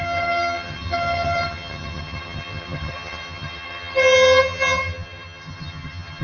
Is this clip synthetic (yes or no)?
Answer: yes